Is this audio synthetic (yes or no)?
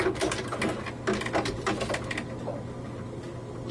no